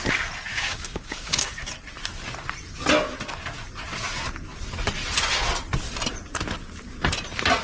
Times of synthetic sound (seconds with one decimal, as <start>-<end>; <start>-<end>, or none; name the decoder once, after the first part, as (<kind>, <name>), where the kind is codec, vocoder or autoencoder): 0.5-1.5 (codec, DAC)